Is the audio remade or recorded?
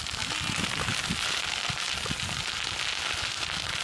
recorded